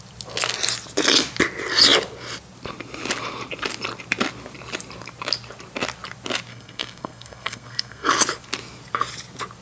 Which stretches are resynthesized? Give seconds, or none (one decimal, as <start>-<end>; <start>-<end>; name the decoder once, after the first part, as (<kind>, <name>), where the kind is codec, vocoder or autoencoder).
6.5-8.1 (codec, SNAC)